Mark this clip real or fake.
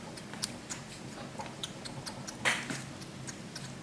real